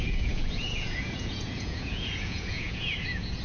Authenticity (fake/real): fake